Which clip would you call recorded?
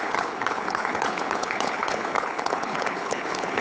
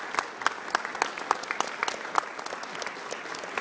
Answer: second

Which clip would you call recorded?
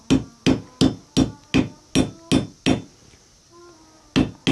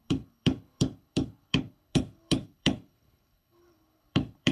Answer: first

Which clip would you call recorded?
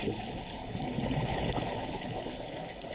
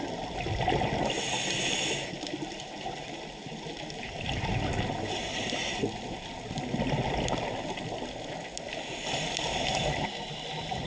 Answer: second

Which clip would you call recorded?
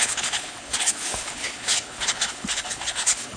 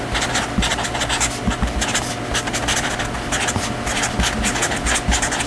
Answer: second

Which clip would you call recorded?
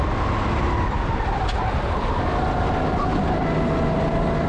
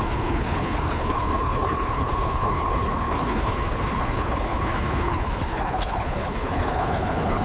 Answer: first